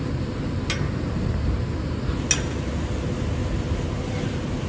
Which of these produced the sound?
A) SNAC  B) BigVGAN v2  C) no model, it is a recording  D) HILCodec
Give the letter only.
C